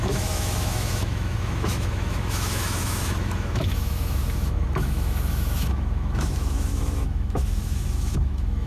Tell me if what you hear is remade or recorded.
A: remade